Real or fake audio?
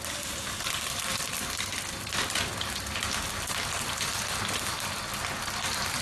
real